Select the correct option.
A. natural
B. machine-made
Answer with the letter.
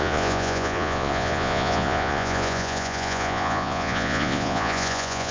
B